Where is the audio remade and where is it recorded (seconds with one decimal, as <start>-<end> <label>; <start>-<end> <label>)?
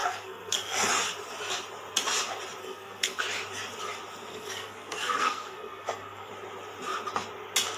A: 0.0-0.9 remade; 0.9-2.6 recorded; 2.6-3.2 remade; 3.2-4.3 recorded; 4.3-6.3 remade; 6.3-7.8 recorded